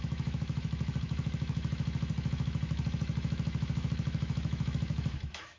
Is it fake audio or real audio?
fake